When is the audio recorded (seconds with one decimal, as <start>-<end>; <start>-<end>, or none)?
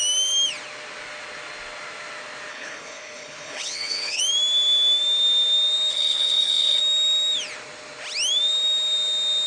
0.0-2.5; 4.2-5.9; 6.8-9.5